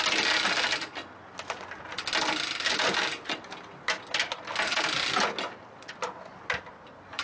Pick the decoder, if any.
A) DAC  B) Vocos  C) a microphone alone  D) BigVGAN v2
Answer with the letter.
C